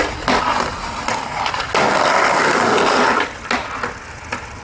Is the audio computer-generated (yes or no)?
no